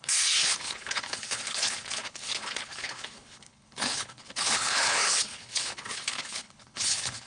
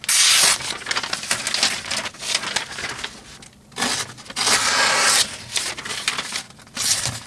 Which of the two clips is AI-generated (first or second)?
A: first